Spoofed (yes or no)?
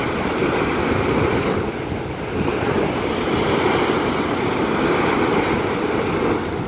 yes